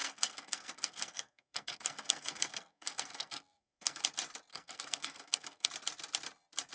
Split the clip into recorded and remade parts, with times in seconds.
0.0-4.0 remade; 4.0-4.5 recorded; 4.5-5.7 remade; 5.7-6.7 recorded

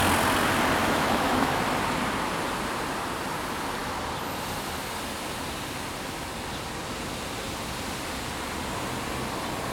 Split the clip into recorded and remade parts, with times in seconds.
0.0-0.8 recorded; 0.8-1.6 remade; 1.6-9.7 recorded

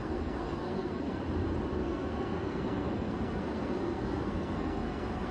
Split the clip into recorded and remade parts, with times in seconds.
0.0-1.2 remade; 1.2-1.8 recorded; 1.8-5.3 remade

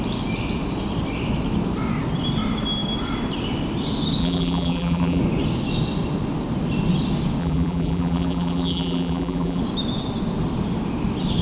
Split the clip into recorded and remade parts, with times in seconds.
0.0-4.2 recorded; 4.2-5.2 remade; 5.2-7.4 recorded; 7.4-9.6 remade; 9.6-11.4 recorded

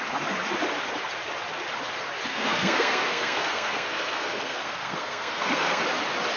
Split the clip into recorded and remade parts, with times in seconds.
0.0-2.3 recorded; 2.3-5.8 remade; 5.8-6.4 recorded

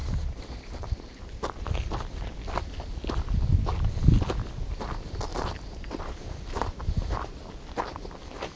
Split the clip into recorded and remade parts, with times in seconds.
0.0-1.5 remade; 1.5-5.3 recorded; 5.3-6.8 remade; 6.8-8.6 recorded